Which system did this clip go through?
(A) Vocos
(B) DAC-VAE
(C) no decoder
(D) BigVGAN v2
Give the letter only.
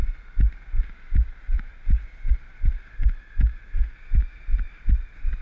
C